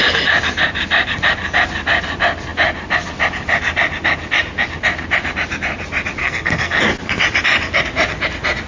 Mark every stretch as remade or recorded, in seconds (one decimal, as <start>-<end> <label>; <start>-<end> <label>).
0.0-6.2 recorded; 6.2-6.8 remade; 6.8-8.7 recorded